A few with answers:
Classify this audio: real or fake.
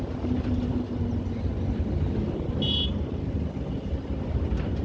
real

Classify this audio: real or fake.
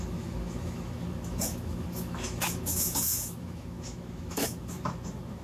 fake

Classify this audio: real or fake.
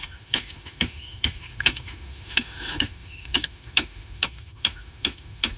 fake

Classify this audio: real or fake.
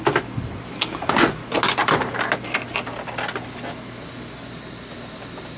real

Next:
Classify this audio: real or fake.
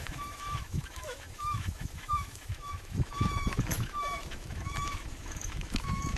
fake